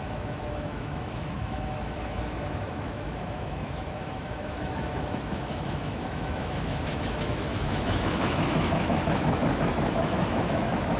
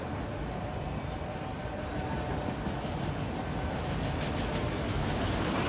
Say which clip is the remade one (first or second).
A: first